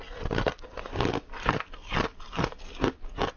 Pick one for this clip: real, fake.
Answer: real